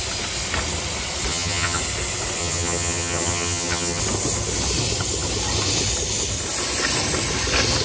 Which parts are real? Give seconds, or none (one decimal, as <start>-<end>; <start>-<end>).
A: 0.0-1.3; 1.8-2.4; 4.0-7.8